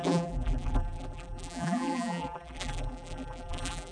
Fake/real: fake